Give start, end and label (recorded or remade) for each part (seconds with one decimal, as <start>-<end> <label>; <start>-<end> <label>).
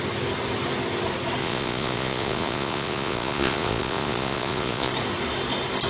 0.0-1.4 recorded; 1.4-4.9 remade; 4.9-5.9 recorded